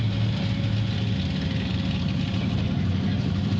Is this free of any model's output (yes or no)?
yes